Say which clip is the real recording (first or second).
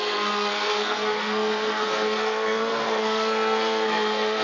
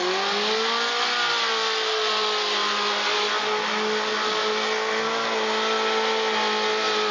second